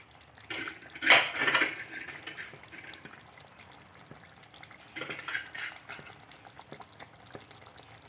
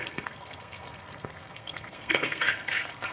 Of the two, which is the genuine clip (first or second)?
first